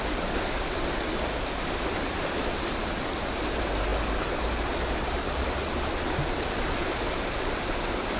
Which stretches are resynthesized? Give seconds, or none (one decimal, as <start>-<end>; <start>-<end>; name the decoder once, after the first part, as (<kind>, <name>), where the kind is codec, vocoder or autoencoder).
none